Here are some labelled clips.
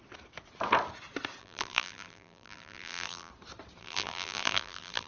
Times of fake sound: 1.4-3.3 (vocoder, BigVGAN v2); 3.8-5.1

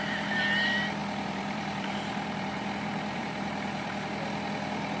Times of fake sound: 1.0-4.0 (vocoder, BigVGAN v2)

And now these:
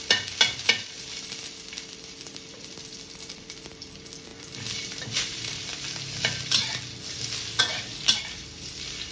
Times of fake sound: 0.0-5.7 (vocoder, BigVGAN v2); 7.6-9.1

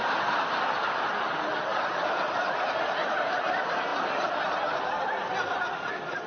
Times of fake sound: none

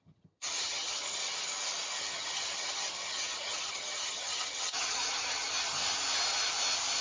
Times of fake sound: 0.0-1.2 (vocoder, HiFi-GAN); 2.0-5.8

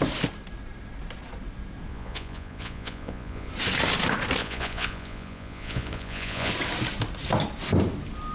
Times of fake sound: 1.9-3.5 (vocoder, Vocos); 4.4-6.5

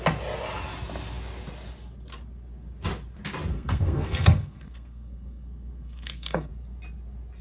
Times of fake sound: 3.5-6.5 (codec, SNAC)

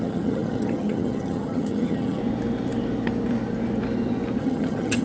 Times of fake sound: 0.0-2.2 (vocoder, HiFi-GAN); 4.4-5.0